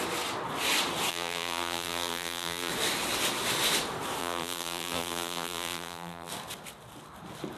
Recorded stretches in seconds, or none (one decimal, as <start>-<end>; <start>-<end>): 0.0-1.1; 2.7-4.2; 6.3-7.6